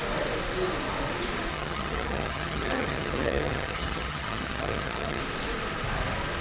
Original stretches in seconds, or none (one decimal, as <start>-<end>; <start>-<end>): 0.0-1.5; 5.2-6.4